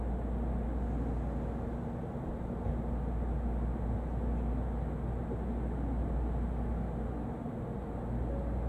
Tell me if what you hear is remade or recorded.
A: recorded